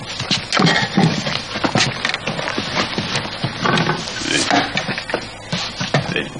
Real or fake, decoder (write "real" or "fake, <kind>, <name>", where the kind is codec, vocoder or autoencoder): real